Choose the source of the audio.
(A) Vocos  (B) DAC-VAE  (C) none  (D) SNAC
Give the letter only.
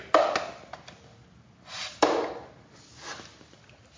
C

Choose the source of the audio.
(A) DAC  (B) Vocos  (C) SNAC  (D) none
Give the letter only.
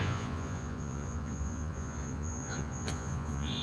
B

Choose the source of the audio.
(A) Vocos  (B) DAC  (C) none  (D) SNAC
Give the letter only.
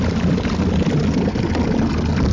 C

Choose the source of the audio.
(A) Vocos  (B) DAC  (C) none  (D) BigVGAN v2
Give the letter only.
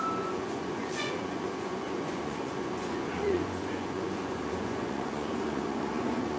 A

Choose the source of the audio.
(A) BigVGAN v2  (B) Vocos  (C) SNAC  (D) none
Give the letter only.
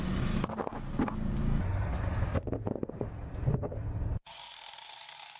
D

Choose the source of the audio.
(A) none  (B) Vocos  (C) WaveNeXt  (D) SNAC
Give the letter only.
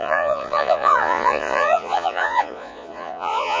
B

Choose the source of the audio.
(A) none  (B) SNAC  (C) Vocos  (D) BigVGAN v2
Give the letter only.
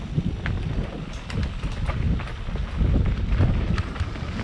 A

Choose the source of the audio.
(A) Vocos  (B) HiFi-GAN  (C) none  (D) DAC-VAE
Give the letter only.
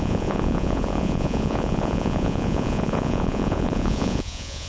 A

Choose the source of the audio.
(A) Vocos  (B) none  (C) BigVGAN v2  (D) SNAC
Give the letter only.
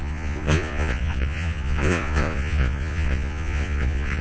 A